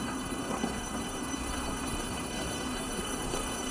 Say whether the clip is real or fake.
fake